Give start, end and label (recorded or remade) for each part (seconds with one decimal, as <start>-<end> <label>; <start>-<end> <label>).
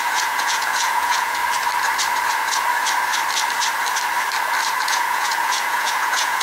0.0-1.4 remade; 1.4-4.8 recorded; 4.8-6.4 remade